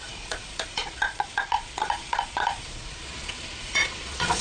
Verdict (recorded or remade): remade